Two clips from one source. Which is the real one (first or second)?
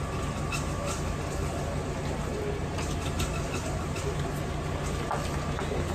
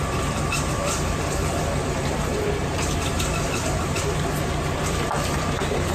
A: first